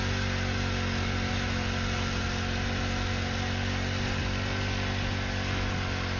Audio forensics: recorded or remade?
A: recorded